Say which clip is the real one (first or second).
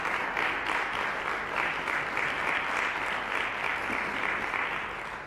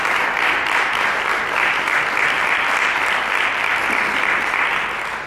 first